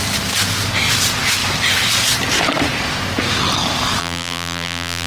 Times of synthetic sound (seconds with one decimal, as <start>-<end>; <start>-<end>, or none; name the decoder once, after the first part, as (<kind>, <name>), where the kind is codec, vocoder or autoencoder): 4.0-5.1 (vocoder, BigVGAN v2)